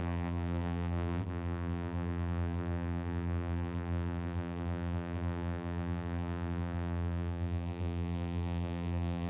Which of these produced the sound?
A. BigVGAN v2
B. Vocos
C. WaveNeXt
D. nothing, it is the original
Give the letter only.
A